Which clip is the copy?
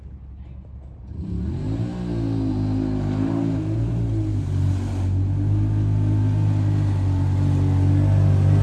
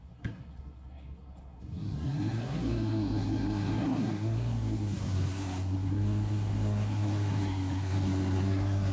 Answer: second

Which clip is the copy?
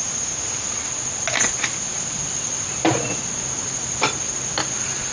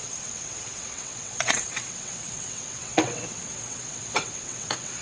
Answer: second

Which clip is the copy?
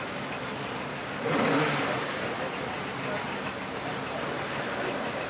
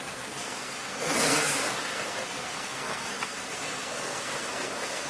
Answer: second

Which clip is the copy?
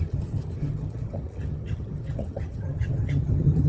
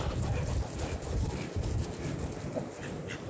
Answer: first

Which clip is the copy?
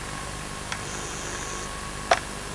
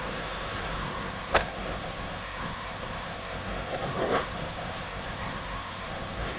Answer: second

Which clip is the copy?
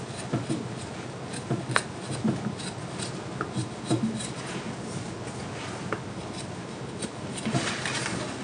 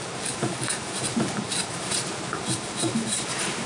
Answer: second